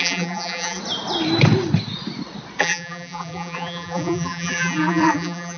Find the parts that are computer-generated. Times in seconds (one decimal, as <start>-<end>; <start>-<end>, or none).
0.0-0.8; 2.6-5.6